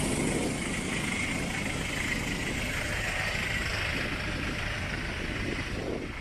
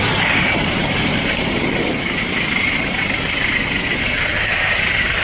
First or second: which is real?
first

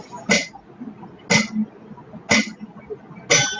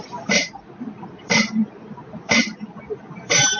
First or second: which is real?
first